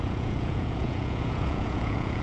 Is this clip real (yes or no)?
no